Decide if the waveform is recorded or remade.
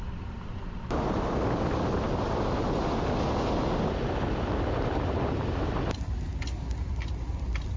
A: recorded